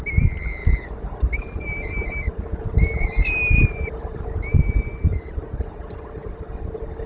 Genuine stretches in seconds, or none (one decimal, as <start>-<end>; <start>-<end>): 0.0-0.6; 4.6-6.2